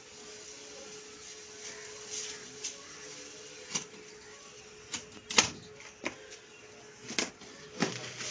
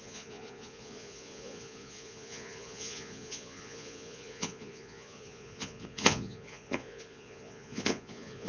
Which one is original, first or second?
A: first